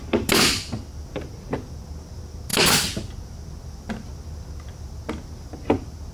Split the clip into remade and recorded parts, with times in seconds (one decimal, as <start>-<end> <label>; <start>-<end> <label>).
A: 0.0-2.5 recorded; 2.5-3.2 remade; 3.2-6.1 recorded